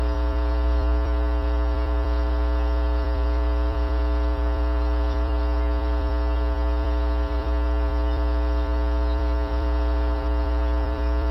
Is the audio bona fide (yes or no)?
no